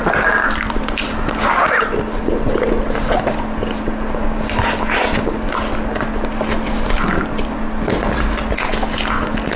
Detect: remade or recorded recorded